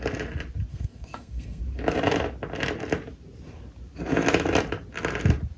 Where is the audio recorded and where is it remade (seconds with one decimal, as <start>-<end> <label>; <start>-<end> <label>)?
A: 0.0-0.7 recorded; 0.7-1.6 remade; 1.6-5.6 recorded